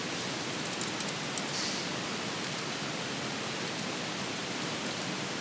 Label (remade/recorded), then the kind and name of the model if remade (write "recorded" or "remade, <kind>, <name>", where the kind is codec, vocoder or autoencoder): recorded